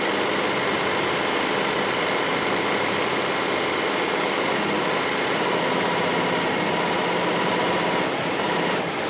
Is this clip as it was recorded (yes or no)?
yes